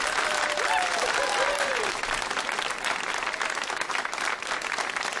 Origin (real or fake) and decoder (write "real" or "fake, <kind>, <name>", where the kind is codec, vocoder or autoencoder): real